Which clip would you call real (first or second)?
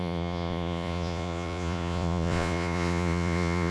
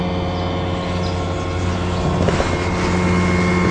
second